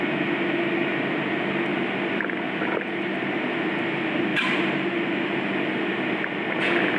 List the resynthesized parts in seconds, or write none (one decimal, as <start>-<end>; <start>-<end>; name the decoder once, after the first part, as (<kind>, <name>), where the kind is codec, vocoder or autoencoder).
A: 4.3-5.5 (vocoder, BigVGAN v2)